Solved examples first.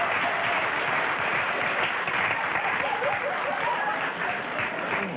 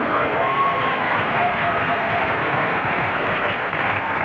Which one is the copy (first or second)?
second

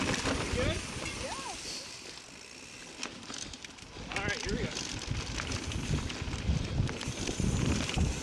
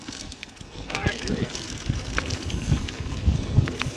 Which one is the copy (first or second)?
second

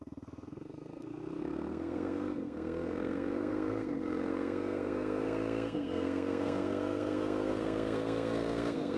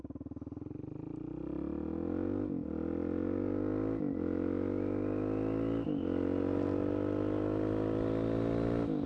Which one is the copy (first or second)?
first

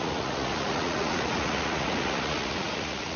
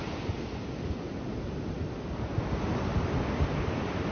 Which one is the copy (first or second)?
first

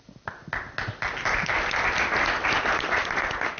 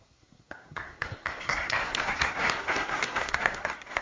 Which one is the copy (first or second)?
second